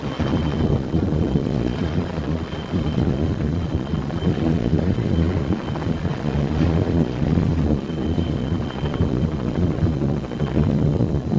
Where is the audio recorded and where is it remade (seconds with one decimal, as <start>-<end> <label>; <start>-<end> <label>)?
0.0-11.4 remade